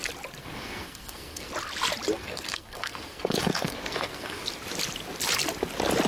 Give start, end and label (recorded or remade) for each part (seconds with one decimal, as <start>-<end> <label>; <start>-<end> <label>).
0.0-0.4 recorded; 0.4-1.5 remade; 1.5-2.1 recorded; 2.1-4.4 remade; 4.4-6.1 recorded